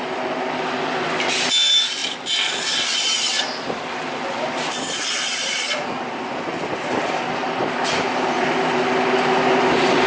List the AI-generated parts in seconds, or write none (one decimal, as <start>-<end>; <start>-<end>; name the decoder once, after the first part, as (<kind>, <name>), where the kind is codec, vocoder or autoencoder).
2.0-6.4 (vocoder, BigVGAN v2); 7.4-8.8